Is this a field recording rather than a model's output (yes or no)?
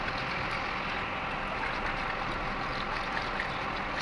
yes